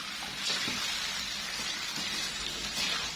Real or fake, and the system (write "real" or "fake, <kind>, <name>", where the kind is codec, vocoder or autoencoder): real